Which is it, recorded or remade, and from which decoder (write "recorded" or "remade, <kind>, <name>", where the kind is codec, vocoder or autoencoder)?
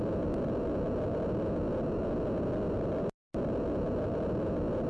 recorded